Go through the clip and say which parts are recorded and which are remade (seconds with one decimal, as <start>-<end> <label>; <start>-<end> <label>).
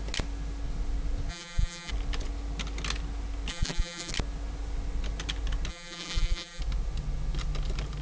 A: 0.0-1.3 recorded; 1.3-1.9 remade; 1.9-3.5 recorded; 3.5-4.1 remade; 4.1-5.7 recorded; 5.7-6.6 remade; 6.6-8.0 recorded